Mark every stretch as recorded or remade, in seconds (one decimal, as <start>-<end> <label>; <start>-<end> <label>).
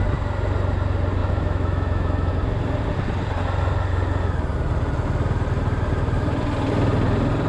0.0-1.2 recorded; 1.2-2.3 remade; 2.3-7.5 recorded